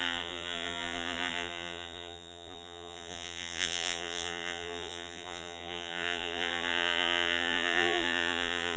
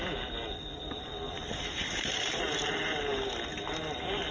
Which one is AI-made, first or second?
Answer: first